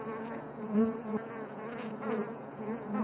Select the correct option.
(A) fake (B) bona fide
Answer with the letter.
A